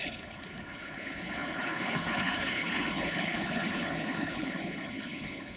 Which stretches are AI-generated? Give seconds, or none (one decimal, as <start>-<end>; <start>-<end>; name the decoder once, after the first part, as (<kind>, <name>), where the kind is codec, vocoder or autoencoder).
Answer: 0.0-5.6 (codec, HILCodec)